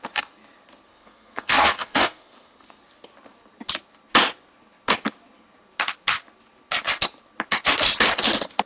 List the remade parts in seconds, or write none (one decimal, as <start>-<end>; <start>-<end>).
0.9-2.8